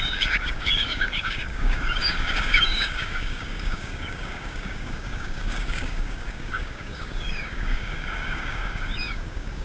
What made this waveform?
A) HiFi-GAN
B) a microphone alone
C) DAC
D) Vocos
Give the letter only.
C